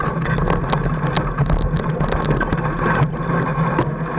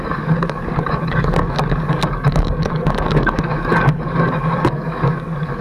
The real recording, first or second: first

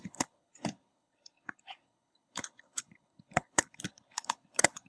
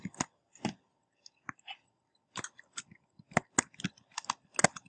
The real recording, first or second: second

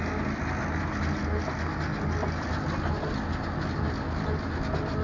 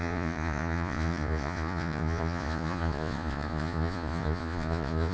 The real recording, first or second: first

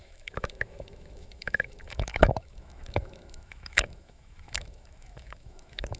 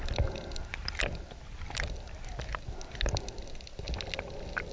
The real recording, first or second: second